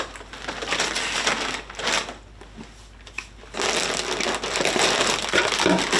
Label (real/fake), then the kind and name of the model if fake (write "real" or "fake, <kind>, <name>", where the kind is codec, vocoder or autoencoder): real